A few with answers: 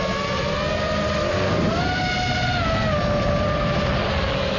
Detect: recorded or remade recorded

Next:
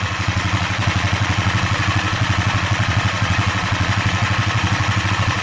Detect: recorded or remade remade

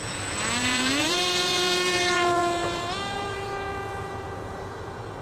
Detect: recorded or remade remade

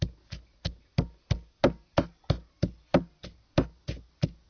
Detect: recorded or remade recorded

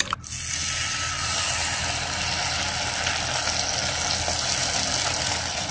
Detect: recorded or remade recorded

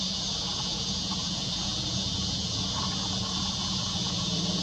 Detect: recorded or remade remade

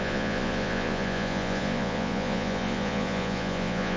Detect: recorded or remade remade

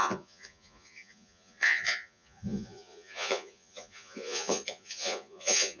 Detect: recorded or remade remade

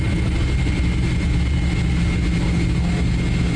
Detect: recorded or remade recorded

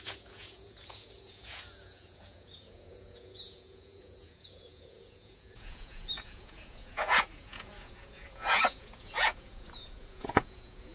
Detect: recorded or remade remade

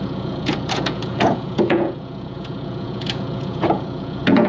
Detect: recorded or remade remade